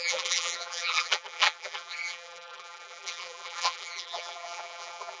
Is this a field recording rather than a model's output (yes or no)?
no